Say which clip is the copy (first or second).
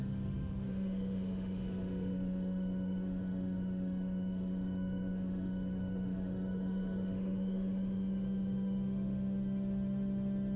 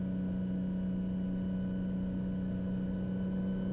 first